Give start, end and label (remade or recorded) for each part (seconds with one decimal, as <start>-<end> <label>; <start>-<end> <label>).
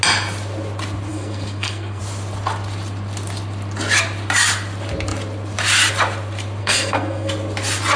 0.0-1.1 recorded; 1.1-2.0 remade; 2.0-6.6 recorded; 6.6-7.3 remade; 7.3-8.0 recorded